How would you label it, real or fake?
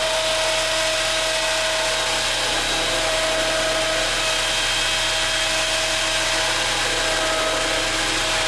real